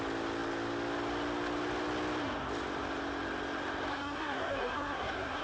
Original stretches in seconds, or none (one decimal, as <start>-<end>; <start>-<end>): 0.0-3.9